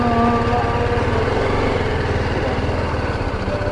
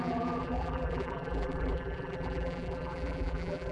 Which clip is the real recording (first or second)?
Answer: first